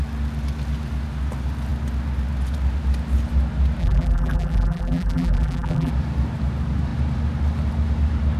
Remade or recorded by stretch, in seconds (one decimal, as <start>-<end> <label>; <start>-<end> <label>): 0.0-3.8 recorded; 3.8-5.9 remade; 5.9-8.4 recorded